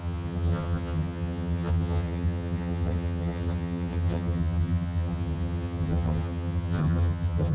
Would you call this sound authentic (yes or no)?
no